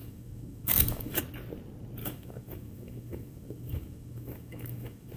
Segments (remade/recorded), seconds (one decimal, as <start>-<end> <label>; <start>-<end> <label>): 0.0-1.2 remade; 1.2-2.0 recorded; 2.0-5.2 remade

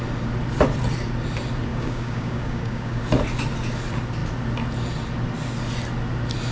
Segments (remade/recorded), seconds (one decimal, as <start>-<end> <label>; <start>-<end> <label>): 0.0-1.7 recorded; 1.7-3.0 remade; 3.0-6.5 recorded

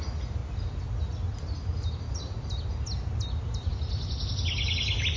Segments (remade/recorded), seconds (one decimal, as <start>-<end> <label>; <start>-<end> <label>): 0.0-5.2 recorded

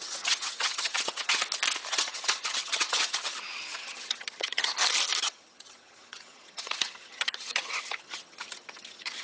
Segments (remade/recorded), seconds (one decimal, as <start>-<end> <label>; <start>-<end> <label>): 0.0-1.4 remade; 1.4-1.9 recorded; 1.9-4.7 remade; 4.7-5.2 recorded; 5.2-9.2 remade